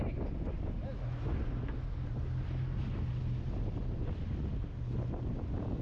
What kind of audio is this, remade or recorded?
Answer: recorded